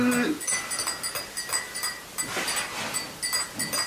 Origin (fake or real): real